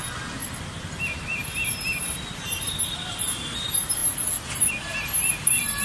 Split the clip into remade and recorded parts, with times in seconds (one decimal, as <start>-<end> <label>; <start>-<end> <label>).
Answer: 0.0-5.8 recorded